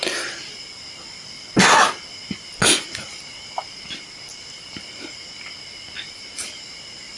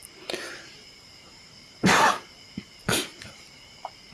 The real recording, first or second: first